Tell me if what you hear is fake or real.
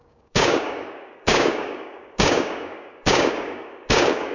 fake